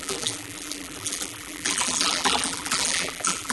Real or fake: fake